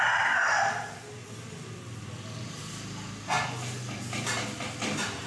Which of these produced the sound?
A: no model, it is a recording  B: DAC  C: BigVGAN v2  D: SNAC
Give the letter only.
A